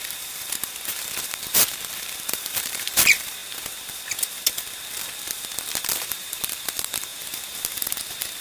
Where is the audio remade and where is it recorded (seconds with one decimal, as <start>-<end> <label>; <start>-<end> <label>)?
0.0-3.4 remade; 3.4-5.8 recorded; 5.8-7.1 remade; 7.1-8.4 recorded